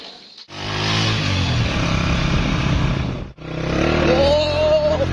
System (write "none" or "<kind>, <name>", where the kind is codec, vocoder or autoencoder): none